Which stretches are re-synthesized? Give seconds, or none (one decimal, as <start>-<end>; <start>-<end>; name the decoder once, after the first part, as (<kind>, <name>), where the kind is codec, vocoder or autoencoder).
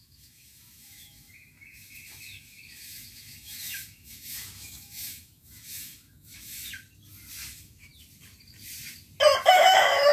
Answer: 0.0-6.6 (autoencoder, DAC-VAE); 7.5-7.9; 9.5-10.1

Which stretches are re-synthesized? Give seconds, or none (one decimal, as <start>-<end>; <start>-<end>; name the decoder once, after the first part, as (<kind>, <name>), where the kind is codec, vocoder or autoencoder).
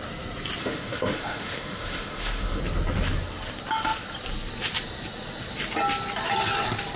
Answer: 0.6-2.6 (autoencoder, DAC-VAE)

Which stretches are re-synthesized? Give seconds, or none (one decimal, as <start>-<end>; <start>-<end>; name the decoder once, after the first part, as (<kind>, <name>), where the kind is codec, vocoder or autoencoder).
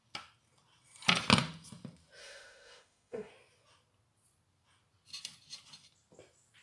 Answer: 2.2-3.3 (autoencoder, DAC-VAE)